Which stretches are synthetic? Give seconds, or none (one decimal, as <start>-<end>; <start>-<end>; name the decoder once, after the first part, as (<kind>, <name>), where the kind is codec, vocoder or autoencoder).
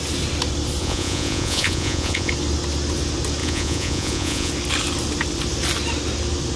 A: 0.8-2.3 (vocoder, Vocos); 3.4-4.5